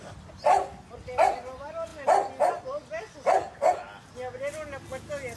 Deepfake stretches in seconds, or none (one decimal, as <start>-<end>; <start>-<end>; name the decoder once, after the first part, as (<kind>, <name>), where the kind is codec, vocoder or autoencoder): none